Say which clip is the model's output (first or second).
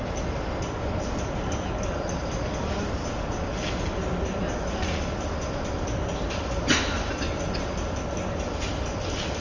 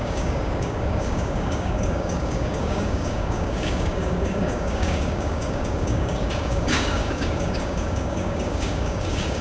second